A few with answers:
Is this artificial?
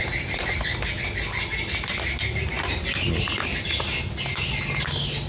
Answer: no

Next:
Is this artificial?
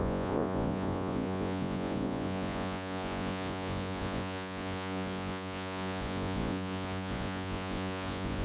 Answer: yes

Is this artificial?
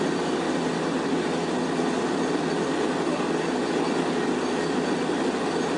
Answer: no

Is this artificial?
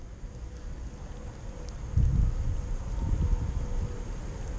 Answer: no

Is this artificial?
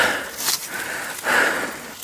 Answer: no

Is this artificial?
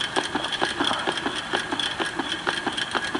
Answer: no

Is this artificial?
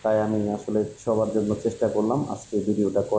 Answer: no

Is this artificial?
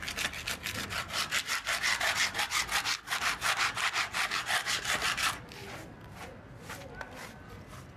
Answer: no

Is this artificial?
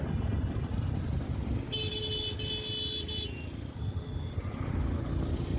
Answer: no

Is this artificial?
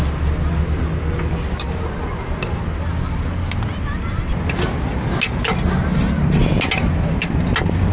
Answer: no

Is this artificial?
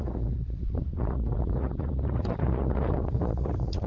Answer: yes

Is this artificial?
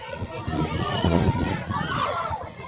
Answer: yes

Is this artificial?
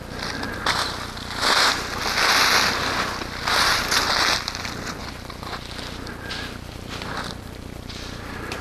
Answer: no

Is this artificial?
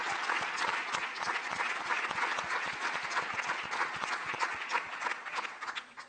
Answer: yes